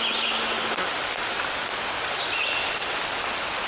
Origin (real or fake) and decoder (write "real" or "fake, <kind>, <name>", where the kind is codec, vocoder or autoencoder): real